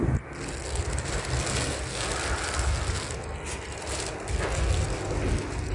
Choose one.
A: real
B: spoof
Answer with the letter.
A